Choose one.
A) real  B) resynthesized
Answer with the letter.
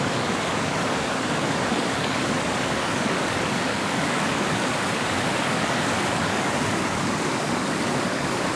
B